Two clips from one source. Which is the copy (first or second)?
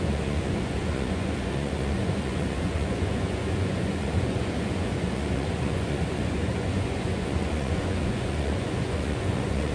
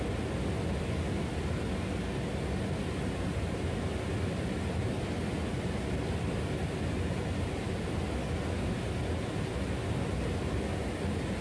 first